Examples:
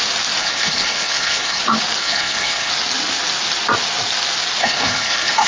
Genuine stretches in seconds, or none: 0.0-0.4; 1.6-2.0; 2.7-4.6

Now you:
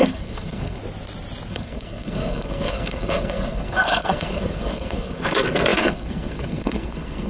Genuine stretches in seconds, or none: 0.8-1.5

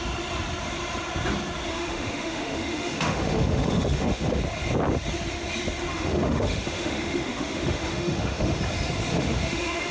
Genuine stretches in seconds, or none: 0.0-1.7; 4.4-5.9; 8.6-9.1